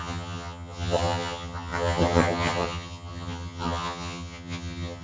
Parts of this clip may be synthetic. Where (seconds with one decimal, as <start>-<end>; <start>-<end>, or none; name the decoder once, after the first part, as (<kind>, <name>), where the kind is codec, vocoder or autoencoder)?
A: 0.0-5.0 (vocoder, HiFi-GAN)

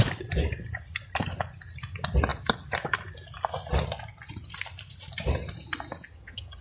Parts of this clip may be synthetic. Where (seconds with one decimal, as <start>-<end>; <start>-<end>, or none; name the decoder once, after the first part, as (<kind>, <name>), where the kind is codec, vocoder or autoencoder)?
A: 6.1-6.6 (vocoder, HiFi-GAN)